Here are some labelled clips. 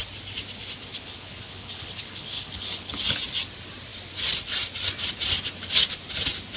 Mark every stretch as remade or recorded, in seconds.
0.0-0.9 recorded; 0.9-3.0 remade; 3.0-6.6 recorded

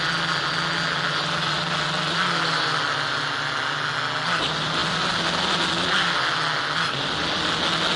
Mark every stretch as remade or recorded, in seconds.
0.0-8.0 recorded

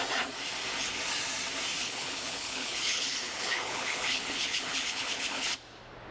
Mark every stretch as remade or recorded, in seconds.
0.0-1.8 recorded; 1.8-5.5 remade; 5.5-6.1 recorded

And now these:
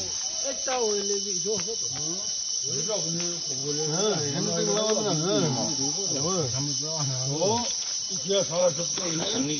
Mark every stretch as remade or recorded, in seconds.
0.0-8.6 recorded; 8.6-9.6 remade

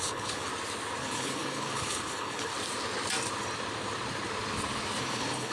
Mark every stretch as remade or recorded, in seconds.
0.0-0.5 remade; 0.5-1.0 recorded; 1.0-2.5 remade; 2.5-5.0 recorded; 5.0-5.5 remade

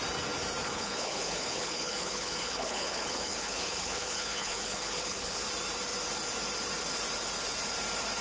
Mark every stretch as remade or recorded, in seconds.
0.0-0.6 recorded; 0.6-5.4 remade; 5.4-8.2 recorded

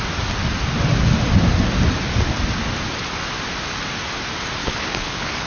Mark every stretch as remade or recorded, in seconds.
0.0-4.6 recorded; 4.6-5.5 remade

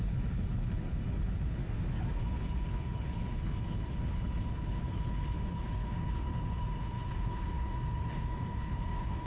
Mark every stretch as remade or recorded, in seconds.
0.0-1.6 remade; 1.6-2.2 recorded; 2.2-9.3 remade